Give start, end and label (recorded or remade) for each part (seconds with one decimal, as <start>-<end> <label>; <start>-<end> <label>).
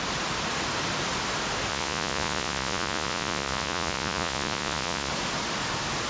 0.0-1.7 recorded; 1.7-5.1 remade; 5.1-6.1 recorded